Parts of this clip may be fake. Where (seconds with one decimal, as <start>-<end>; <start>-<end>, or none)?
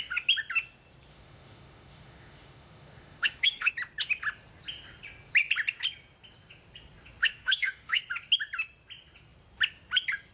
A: 1.1-3.7; 7.2-8.0